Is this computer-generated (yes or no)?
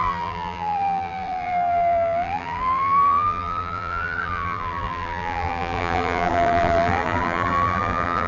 yes